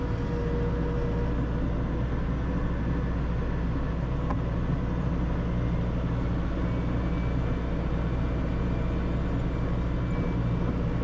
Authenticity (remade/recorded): recorded